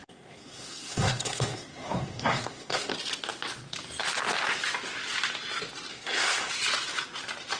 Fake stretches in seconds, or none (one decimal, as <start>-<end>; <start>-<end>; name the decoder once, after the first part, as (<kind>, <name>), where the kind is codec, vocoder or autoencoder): 0.0-2.9 (codec, SNAC); 5.9-6.5